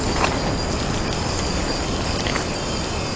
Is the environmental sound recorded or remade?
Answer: recorded